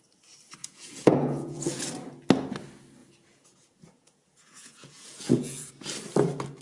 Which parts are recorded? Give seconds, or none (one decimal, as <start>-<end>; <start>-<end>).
0.0-0.6; 1.8-3.0; 5.7-6.6